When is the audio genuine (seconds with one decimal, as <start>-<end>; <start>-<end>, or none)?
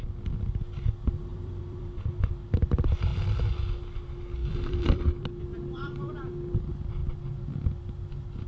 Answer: 0.0-1.3; 2.1-4.4; 6.3-8.5